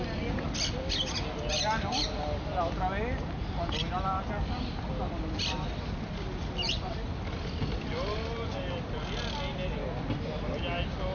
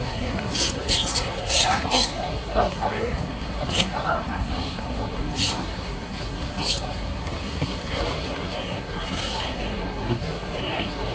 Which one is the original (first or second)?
first